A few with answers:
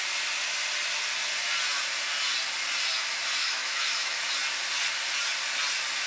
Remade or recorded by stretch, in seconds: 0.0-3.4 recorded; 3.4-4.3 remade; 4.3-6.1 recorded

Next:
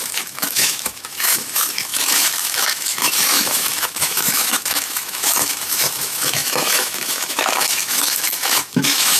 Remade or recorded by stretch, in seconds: 0.0-9.2 remade

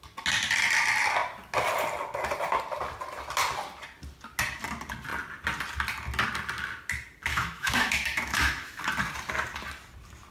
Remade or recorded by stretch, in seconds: 0.0-7.3 recorded; 7.3-8.8 remade; 8.8-10.3 recorded

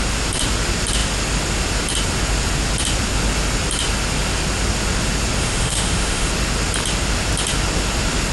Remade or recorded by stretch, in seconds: 0.0-5.4 recorded; 5.4-6.3 remade; 6.3-8.3 recorded

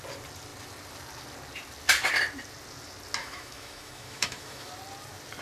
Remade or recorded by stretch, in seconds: 0.0-3.2 recorded; 3.2-4.7 remade; 4.7-5.4 recorded

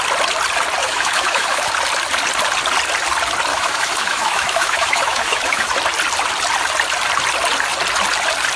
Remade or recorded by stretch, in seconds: 0.0-0.8 recorded; 0.8-1.7 remade; 1.7-3.5 recorded; 3.5-5.7 remade; 5.7-8.6 recorded

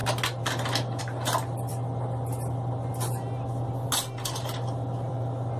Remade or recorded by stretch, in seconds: 0.0-5.6 recorded

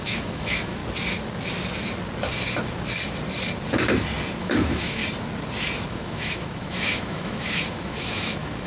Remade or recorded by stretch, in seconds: 0.0-0.8 remade; 0.8-4.4 recorded; 4.4-5.0 remade; 5.0-5.9 recorded; 5.9-8.7 remade